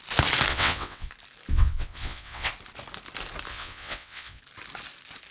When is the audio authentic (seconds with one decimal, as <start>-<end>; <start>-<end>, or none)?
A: 0.0-0.5; 1.1-1.5; 2.5-3.5; 4.4-5.3